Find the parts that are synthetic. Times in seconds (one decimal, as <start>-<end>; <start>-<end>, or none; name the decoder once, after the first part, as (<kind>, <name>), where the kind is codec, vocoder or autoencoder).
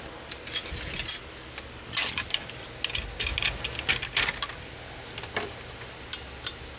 none